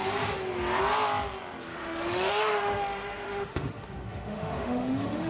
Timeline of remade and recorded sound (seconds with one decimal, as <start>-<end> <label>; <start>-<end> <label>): 0.0-1.7 recorded; 1.7-5.3 remade